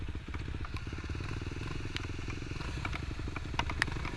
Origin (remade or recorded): recorded